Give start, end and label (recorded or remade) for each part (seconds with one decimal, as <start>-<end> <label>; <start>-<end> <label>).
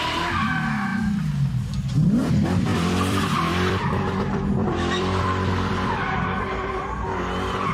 0.0-0.9 recorded; 0.9-2.3 remade; 2.3-2.7 recorded; 2.7-5.2 remade; 5.2-7.7 recorded